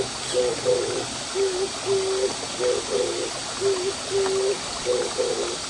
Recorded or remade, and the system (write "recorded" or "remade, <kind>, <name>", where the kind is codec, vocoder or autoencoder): recorded